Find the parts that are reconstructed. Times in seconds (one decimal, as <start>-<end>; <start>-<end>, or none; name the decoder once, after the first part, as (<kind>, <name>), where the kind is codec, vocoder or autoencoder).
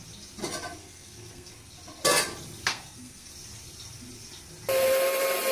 0.8-1.5 (codec, SNAC); 2.7-3.3